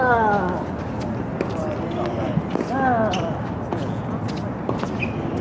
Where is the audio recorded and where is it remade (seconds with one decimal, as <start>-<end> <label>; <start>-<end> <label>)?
0.0-3.7 recorded; 3.7-4.2 remade; 4.2-5.4 recorded